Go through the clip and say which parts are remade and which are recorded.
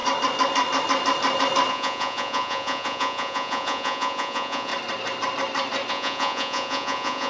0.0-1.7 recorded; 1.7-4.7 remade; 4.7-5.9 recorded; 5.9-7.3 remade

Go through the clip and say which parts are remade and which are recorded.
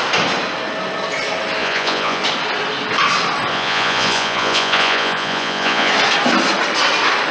0.0-1.6 recorded; 1.6-2.2 remade; 2.2-3.5 recorded; 3.5-5.9 remade; 5.9-7.3 recorded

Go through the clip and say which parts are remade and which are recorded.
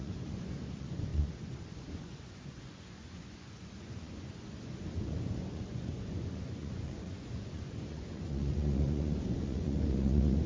0.0-10.5 remade